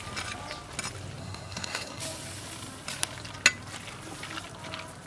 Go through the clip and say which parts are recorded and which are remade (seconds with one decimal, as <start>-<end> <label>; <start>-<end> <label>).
0.0-1.2 recorded; 1.2-2.0 remade; 2.0-5.1 recorded